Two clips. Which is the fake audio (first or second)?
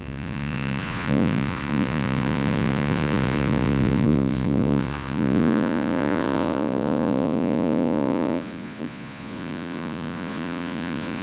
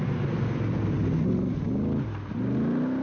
first